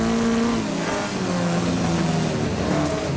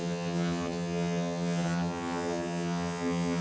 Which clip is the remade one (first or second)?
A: second